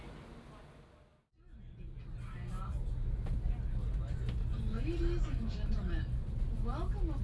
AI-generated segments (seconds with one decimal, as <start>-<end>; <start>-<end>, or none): none